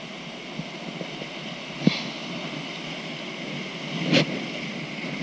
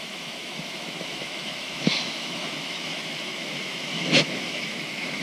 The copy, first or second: second